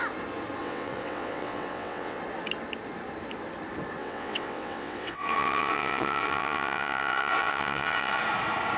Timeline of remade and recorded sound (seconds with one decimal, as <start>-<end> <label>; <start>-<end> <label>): 0.0-0.6 recorded; 0.6-2.2 remade; 2.2-4.0 recorded; 4.0-8.2 remade; 8.2-8.8 recorded